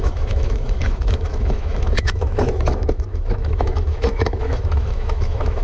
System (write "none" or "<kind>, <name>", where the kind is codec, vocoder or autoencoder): autoencoder, DAC-VAE